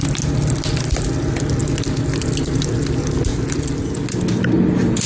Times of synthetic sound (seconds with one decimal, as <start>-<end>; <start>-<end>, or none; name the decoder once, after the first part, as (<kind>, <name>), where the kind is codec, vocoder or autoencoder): none